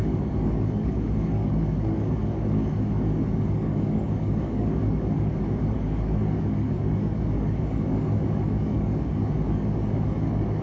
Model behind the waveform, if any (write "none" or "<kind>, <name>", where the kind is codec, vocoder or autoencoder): codec, DAC